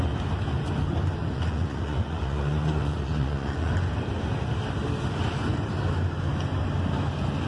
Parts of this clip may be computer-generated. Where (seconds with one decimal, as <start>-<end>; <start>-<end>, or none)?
1.2-3.7